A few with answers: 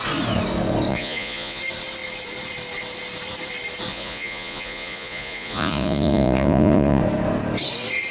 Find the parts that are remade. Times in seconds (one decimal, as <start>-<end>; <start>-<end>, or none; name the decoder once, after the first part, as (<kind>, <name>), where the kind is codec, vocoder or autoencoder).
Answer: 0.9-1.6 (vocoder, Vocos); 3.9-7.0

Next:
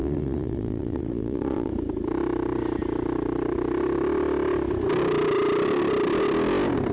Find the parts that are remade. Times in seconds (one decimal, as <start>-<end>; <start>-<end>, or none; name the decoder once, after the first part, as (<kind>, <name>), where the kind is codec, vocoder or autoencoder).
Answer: 0.0-1.7 (vocoder, Vocos)

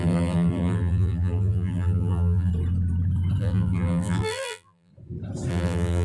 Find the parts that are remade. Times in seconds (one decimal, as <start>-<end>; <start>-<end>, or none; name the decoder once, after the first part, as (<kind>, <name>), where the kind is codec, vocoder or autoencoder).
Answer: 0.0-2.5 (vocoder, BigVGAN v2); 3.4-4.9; 5.5-6.0

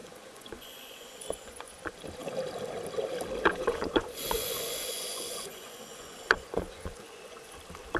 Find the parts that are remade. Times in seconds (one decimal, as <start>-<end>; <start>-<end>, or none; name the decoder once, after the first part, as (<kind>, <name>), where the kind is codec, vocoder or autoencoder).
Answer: 0.0-1.9 (vocoder, Vocos); 3.5-7.6

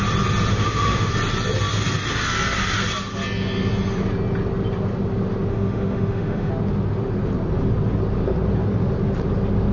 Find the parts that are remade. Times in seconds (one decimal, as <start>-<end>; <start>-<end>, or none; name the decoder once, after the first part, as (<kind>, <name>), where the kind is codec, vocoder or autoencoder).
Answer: 0.5-1.1 (autoencoder, DAC-VAE); 5.5-6.5

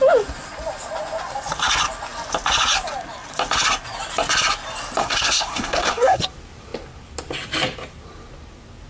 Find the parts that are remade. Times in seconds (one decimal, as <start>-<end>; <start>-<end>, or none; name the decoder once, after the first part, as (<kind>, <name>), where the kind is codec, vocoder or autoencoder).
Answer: 5.0-6.2 (codec, SNAC)